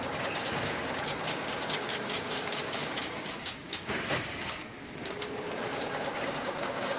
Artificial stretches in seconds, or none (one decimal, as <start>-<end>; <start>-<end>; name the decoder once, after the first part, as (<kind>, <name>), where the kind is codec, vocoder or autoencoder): 0.0-7.0 (codec, DAC)